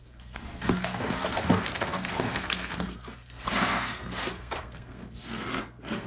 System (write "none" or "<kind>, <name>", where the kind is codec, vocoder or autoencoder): codec, SNAC